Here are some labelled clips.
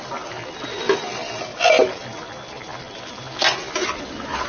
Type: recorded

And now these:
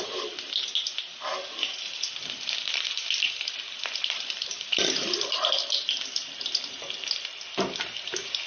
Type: remade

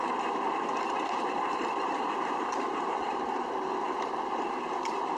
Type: remade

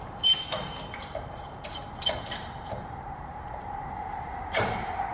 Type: remade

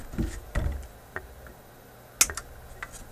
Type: recorded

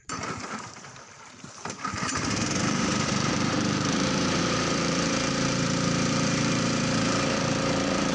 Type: remade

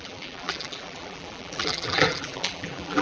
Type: remade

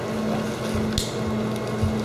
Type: recorded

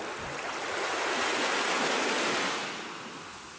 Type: recorded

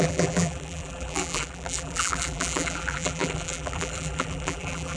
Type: remade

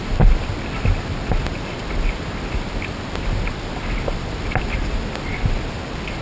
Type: recorded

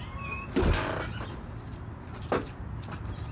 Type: recorded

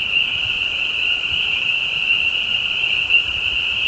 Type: remade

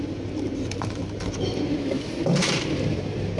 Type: remade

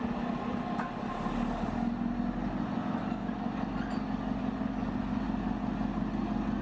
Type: recorded